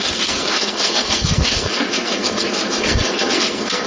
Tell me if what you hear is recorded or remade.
remade